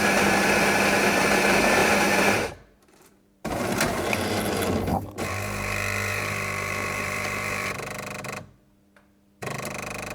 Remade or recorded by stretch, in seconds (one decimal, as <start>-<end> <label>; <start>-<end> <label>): 0.0-1.8 recorded; 1.8-4.0 remade; 4.0-4.9 recorded; 4.9-7.7 remade; 7.7-10.1 recorded